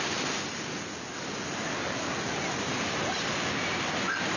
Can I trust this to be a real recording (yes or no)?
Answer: yes